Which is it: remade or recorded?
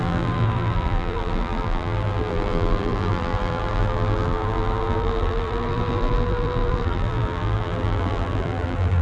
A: remade